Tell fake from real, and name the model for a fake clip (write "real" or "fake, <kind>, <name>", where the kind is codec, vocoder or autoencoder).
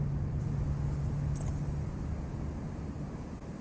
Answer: real